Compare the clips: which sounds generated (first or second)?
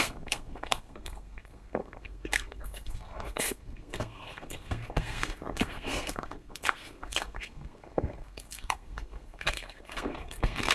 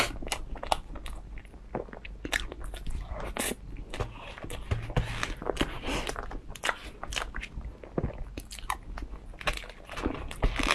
first